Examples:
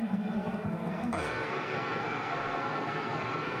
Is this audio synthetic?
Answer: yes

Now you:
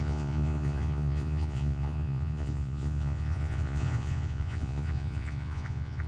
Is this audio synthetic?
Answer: yes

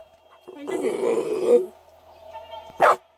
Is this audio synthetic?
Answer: no